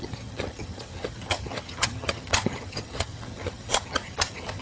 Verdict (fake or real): fake